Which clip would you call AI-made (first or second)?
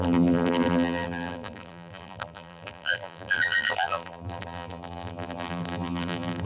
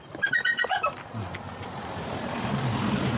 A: first